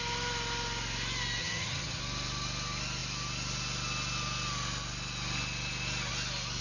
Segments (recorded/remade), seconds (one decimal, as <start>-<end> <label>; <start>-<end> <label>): 0.0-1.4 recorded; 1.4-2.0 remade; 2.0-6.6 recorded

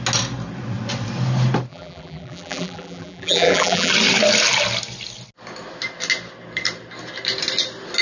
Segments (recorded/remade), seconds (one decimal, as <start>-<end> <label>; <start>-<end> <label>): 0.0-1.7 recorded; 1.7-3.9 remade; 3.9-8.0 recorded

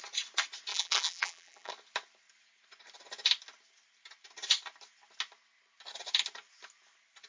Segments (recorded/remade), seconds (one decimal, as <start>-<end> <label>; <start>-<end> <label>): 0.0-0.7 recorded; 0.7-1.7 remade; 1.7-7.3 recorded

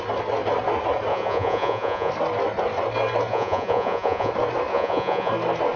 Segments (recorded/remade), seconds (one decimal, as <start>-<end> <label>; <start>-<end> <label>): 0.0-1.1 recorded; 1.1-2.1 remade; 2.1-3.3 recorded; 3.3-4.3 remade; 4.3-4.7 recorded; 4.7-5.3 remade; 5.3-5.8 recorded

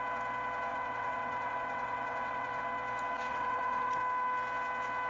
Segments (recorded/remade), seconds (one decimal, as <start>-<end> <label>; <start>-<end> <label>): 0.0-0.7 recorded; 0.7-2.6 remade; 2.6-3.3 recorded; 3.3-4.0 remade; 4.0-5.1 recorded

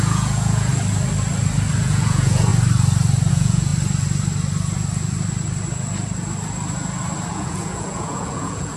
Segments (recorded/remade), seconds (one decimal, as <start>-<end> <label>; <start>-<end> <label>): 0.0-0.7 remade; 0.7-1.8 recorded; 1.8-2.5 remade; 2.5-3.3 recorded; 3.3-3.7 remade; 3.7-7.3 recorded; 7.3-8.8 remade